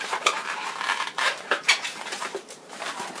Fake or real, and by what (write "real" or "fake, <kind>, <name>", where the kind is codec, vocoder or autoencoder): fake, vocoder, BigVGAN v2